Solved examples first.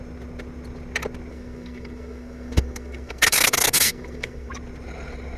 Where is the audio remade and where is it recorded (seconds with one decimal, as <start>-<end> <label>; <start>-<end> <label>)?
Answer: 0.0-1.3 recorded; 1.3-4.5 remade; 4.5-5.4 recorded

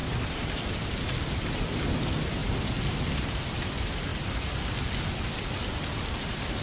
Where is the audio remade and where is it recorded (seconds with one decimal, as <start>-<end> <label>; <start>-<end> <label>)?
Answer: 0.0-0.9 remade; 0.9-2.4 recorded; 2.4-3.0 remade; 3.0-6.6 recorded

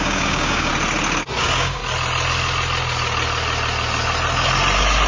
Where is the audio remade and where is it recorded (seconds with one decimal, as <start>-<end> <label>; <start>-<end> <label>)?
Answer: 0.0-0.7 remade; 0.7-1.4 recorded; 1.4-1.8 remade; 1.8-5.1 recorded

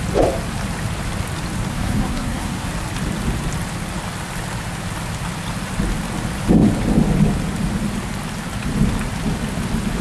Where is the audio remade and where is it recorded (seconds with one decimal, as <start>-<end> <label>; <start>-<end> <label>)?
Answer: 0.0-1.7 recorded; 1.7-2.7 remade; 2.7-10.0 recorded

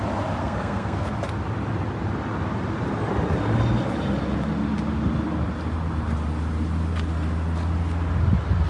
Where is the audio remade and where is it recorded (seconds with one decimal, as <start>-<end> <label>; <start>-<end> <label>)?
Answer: 0.0-0.4 recorded; 0.4-1.1 remade; 1.1-8.7 recorded

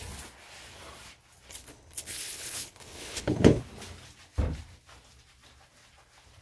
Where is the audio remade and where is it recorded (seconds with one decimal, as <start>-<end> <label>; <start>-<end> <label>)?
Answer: 0.0-1.5 recorded; 1.5-3.6 remade; 3.6-6.4 recorded

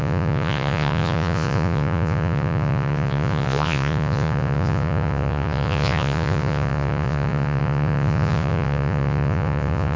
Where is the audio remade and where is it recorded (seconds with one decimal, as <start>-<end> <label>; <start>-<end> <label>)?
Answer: 0.0-10.0 remade